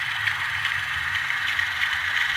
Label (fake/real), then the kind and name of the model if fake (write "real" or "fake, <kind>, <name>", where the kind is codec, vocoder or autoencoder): real